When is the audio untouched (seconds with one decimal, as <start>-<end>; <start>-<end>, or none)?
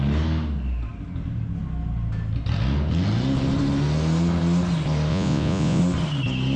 0.0-5.1; 5.8-6.6